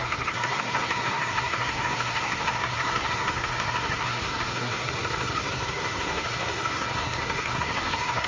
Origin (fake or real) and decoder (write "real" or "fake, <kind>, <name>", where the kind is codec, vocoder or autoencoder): fake, codec, SNAC